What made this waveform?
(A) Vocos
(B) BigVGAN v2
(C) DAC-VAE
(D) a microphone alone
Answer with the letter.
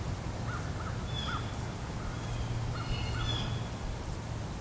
D